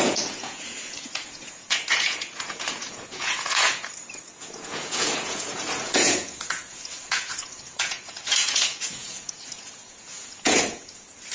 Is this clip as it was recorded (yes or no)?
no